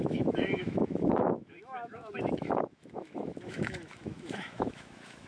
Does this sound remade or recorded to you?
remade